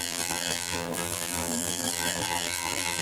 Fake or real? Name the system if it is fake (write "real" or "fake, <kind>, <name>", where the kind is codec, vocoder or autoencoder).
fake, vocoder, BigVGAN v2